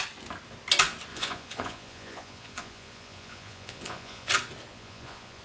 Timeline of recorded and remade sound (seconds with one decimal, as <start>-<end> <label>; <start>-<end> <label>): 0.0-1.1 recorded; 1.1-4.3 remade; 4.3-4.7 recorded; 4.7-5.4 remade